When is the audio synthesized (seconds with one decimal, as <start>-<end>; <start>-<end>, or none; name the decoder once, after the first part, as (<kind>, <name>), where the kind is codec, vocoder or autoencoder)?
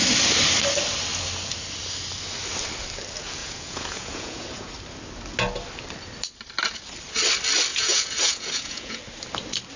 3.4-4.7 (vocoder, Vocos); 7.7-9.0